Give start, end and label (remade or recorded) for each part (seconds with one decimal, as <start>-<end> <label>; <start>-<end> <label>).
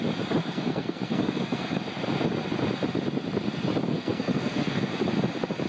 0.0-0.4 recorded; 0.4-1.8 remade; 1.8-3.8 recorded; 3.8-4.9 remade; 4.9-5.7 recorded